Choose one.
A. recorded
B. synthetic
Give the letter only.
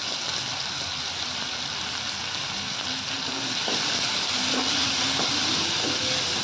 A